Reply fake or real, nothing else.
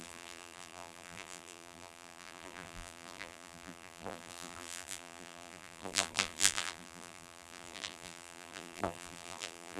fake